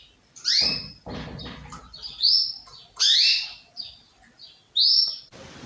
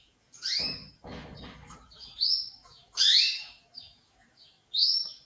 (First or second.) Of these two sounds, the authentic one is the first